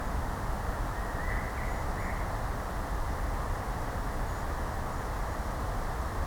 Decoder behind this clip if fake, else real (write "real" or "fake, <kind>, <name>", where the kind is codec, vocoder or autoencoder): real